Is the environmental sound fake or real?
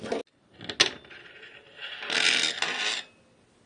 real